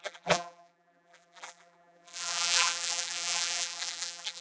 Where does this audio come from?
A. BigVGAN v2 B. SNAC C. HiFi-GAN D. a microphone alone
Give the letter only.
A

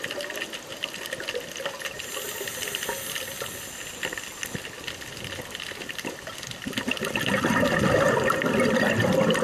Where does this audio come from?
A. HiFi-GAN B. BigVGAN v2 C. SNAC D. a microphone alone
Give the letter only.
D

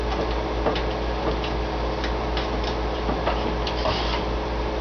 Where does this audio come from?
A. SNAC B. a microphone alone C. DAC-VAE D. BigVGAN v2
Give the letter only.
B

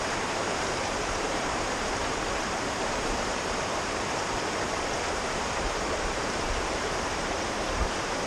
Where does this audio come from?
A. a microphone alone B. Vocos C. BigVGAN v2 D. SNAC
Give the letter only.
C